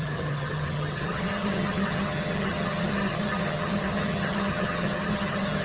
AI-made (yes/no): yes